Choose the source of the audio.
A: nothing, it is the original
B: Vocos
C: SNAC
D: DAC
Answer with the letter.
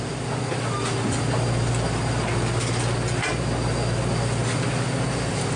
A